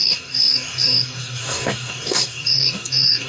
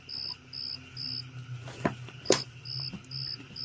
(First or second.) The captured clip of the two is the second